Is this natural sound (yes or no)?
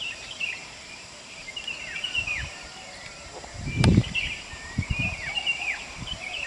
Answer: no